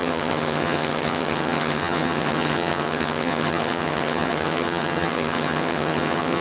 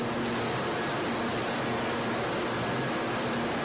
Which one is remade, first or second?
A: first